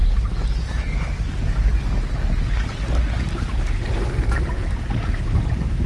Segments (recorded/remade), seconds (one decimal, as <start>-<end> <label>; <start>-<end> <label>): 0.0-5.9 recorded